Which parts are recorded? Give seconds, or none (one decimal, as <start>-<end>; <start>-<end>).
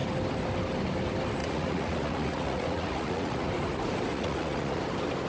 0.0-1.4; 3.5-4.1; 4.8-5.3